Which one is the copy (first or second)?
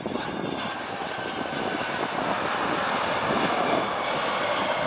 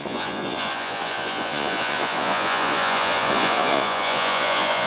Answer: second